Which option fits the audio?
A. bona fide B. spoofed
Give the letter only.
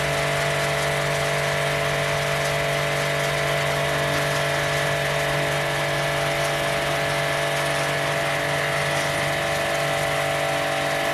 A